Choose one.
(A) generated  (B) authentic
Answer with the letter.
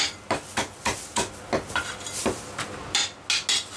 B